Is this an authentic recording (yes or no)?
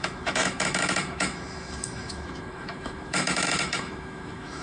no